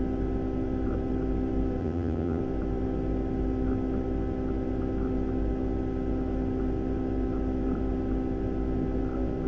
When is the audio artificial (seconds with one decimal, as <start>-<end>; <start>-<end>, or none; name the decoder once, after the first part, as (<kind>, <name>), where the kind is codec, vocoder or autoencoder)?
1.8-2.4 (vocoder, HiFi-GAN)